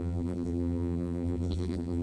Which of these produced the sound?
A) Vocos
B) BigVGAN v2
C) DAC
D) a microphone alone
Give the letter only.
B